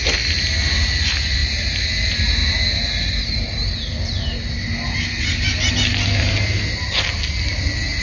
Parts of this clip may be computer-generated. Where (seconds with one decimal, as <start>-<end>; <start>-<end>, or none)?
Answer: none

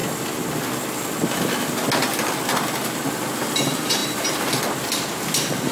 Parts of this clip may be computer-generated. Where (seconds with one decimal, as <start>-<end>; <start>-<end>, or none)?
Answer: 3.4-5.7

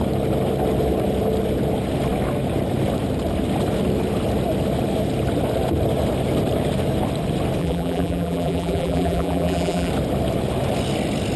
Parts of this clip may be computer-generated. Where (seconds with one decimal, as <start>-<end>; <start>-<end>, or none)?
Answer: 7.6-9.9

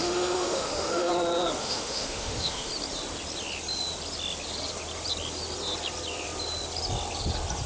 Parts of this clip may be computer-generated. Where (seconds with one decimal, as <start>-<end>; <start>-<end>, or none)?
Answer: 0.0-1.1; 1.6-2.7

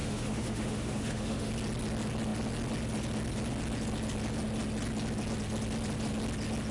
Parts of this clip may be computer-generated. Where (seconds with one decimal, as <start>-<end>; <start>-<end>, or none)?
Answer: 0.0-1.5

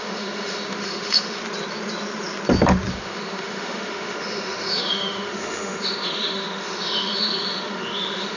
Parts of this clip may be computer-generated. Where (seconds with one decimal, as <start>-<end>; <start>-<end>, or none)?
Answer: 0.0-1.4; 2.9-8.4